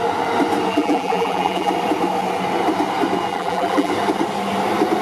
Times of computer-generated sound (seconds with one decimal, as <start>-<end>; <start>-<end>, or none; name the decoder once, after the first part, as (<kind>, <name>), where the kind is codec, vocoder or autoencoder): 0.7-1.7 (vocoder, BigVGAN v2); 3.3-3.9